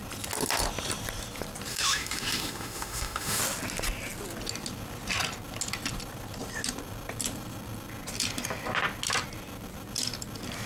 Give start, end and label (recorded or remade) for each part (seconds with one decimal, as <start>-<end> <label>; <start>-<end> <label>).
0.0-1.7 recorded; 1.7-3.4 remade; 3.4-10.7 recorded